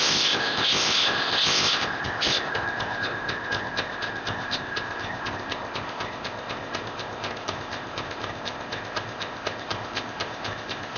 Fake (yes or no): yes